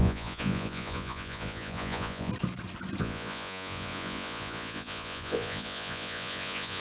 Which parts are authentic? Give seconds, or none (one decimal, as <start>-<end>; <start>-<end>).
2.3-3.0